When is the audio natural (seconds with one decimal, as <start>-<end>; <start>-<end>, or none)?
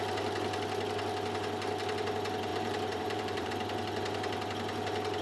0.0-2.5; 3.5-5.2